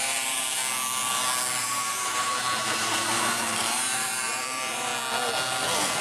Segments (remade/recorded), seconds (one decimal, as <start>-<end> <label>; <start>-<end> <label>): 0.0-0.6 remade; 0.6-1.6 recorded; 1.6-4.9 remade; 4.9-6.0 recorded